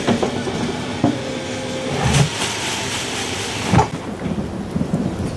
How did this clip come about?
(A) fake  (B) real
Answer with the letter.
B